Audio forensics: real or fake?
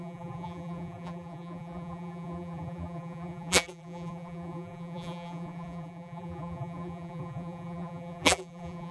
fake